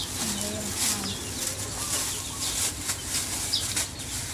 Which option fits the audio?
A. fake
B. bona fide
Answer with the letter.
B